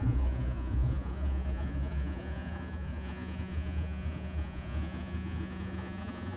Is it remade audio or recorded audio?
remade